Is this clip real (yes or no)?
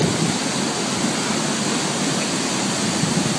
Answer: yes